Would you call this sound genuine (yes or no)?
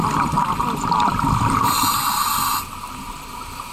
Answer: yes